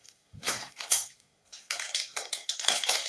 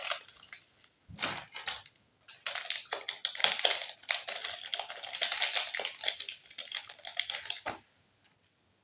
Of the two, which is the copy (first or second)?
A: first